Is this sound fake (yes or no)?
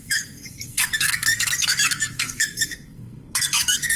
yes